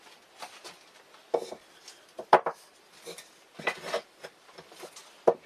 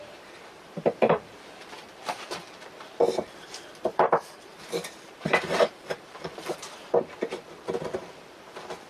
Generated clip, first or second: second